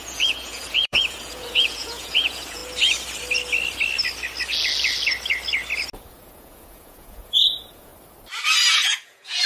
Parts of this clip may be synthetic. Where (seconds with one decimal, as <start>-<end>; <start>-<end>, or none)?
0.0-2.6; 5.9-7.9; 8.7-9.5